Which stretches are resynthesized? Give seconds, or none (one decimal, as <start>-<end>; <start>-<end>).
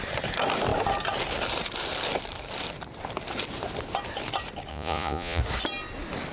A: 4.7-5.4